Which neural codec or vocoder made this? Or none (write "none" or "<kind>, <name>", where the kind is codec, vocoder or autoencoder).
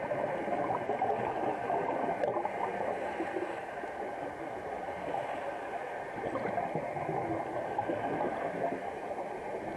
none